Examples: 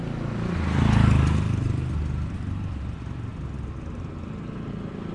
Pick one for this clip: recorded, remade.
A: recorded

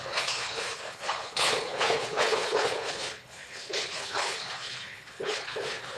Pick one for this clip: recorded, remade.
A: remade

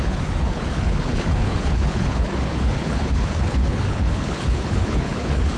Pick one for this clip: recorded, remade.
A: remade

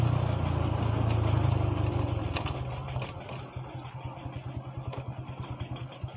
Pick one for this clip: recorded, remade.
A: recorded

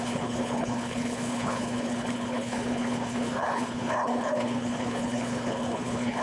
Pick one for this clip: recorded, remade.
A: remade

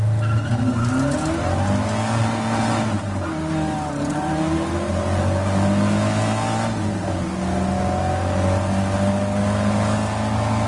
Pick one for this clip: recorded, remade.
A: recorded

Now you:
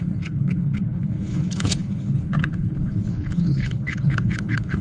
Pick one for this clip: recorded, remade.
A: remade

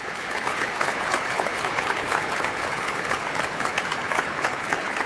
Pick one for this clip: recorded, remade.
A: remade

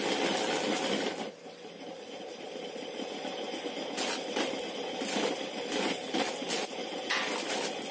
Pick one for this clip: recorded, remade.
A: recorded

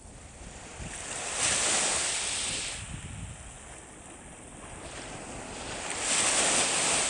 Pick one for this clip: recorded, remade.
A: recorded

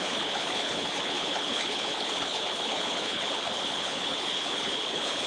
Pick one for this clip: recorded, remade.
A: remade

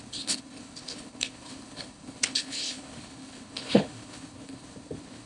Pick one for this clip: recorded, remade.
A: remade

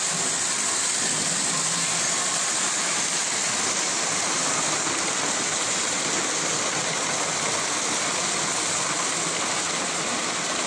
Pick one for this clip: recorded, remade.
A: recorded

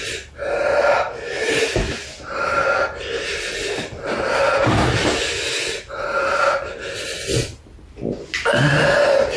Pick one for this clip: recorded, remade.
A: recorded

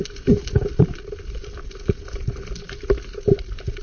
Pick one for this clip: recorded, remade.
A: recorded